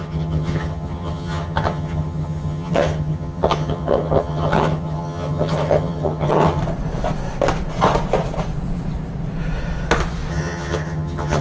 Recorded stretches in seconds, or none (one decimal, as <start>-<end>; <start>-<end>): 6.6-10.3